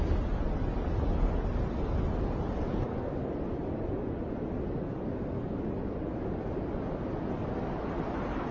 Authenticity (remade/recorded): recorded